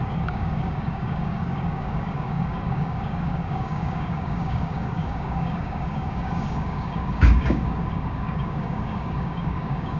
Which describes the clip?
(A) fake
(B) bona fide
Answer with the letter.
A